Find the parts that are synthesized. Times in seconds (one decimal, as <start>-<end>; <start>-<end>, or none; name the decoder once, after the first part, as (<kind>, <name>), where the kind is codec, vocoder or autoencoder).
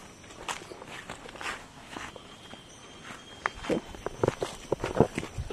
1.6-2.1 (codec, SNAC)